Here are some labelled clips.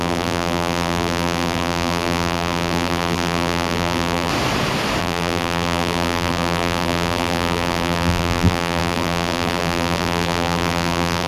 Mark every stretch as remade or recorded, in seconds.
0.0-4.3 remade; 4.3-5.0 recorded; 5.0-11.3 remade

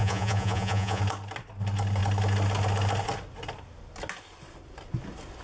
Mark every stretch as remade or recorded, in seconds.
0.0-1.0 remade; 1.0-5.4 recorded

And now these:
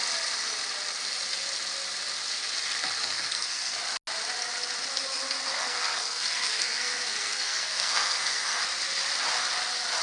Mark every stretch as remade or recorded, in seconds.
0.0-3.0 recorded; 3.0-3.8 remade; 3.8-5.5 recorded; 5.5-8.6 remade; 8.6-10.0 recorded